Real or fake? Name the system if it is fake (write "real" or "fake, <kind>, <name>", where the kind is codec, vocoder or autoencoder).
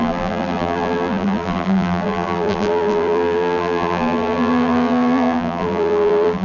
fake, vocoder, BigVGAN v2